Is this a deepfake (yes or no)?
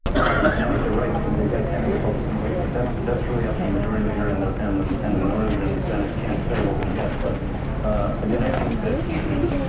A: no